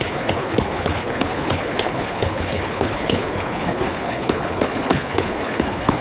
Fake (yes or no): yes